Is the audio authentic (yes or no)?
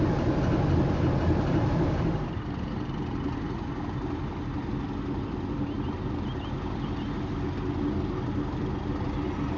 yes